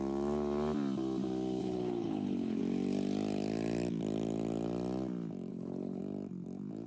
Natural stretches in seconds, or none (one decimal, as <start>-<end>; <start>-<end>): 0.0-1.6; 2.6-5.5; 6.0-6.9